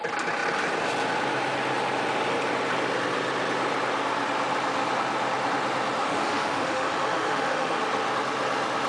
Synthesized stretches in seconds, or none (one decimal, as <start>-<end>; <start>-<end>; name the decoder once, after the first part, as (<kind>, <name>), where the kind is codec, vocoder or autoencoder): 6.0-7.8 (autoencoder, DAC-VAE)